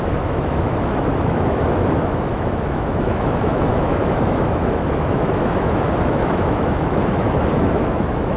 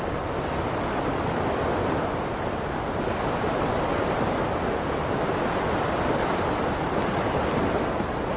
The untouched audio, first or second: second